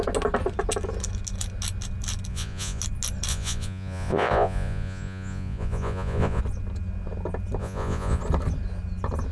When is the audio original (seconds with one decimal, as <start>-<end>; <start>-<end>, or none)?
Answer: 0.0-2.3; 2.8-3.3; 6.4-7.6; 8.2-9.3